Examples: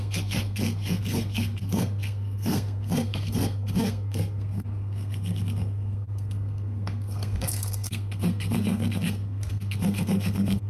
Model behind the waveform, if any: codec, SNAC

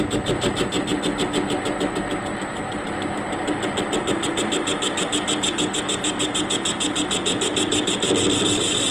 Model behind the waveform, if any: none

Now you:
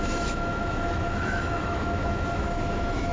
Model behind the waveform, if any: autoencoder, DAC-VAE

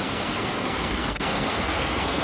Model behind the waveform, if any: codec, SNAC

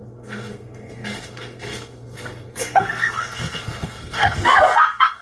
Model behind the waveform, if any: codec, SNAC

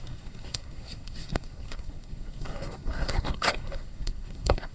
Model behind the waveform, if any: codec, SNAC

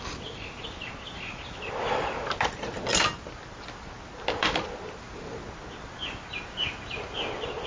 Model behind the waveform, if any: none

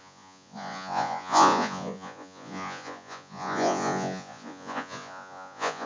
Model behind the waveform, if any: vocoder, Vocos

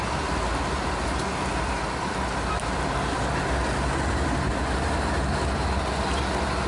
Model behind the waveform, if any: none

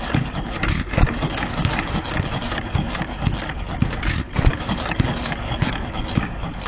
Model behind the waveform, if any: codec, DAC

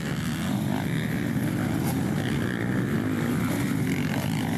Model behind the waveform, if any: none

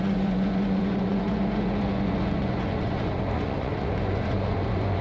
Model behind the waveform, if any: vocoder, Vocos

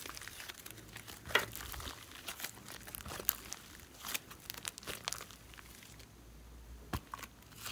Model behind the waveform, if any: none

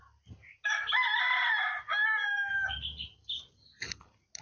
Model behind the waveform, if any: none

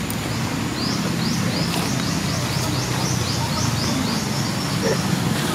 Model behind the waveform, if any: none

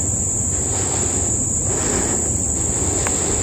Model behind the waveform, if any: none